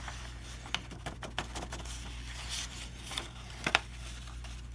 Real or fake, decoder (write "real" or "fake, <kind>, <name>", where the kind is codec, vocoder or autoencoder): real